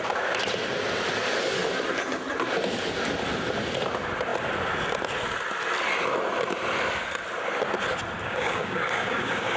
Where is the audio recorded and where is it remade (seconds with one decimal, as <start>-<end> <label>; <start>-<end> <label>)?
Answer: 0.0-8.2 recorded; 8.2-9.6 remade